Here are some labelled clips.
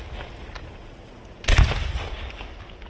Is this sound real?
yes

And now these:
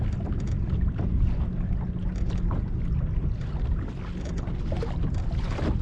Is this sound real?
yes